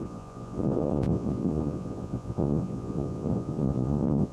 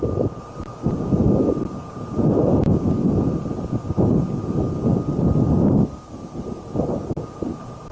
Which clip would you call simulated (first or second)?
first